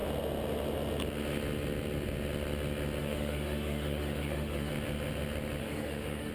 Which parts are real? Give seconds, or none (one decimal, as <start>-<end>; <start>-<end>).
0.0-3.0; 4.7-5.6